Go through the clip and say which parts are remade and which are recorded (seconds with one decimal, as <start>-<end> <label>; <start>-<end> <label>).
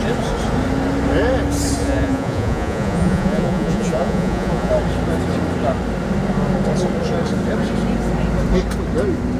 0.0-1.8 recorded; 1.8-4.7 remade; 4.7-9.4 recorded